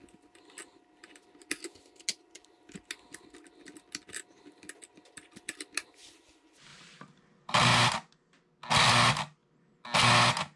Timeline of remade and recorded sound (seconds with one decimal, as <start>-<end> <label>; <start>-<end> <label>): 0.0-6.7 recorded; 6.7-7.8 remade; 7.8-10.6 recorded